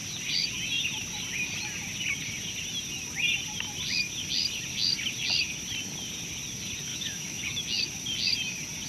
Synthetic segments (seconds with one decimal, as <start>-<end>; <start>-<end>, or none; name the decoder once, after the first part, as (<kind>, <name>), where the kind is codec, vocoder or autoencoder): 6.9-7.6 (autoencoder, DAC-VAE)